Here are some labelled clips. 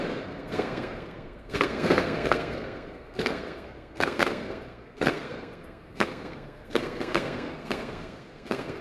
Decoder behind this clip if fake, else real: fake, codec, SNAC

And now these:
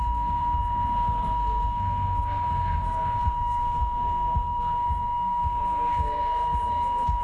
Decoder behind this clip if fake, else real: fake, codec, SNAC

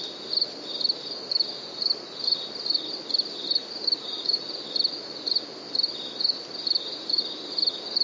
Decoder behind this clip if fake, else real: real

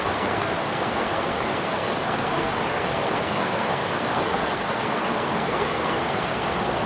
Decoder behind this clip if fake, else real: fake, codec, SNAC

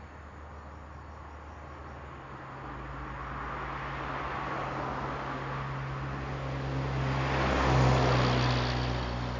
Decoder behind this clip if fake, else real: real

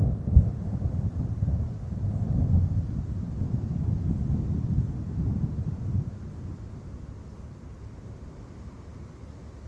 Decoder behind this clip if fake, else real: real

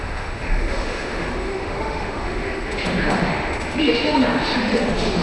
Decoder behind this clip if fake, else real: fake, autoencoder, DAC-VAE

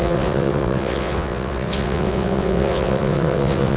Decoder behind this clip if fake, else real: fake, vocoder, WaveNeXt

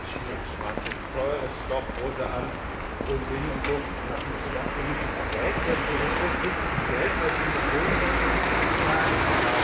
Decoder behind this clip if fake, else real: real